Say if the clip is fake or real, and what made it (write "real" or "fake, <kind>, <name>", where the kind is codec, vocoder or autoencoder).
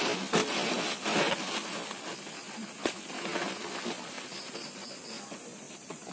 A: real